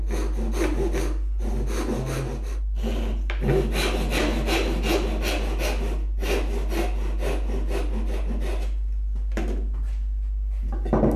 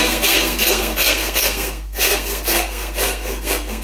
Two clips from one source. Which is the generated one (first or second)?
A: second